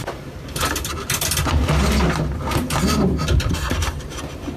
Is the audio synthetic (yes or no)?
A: no